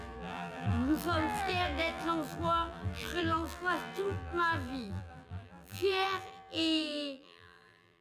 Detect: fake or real fake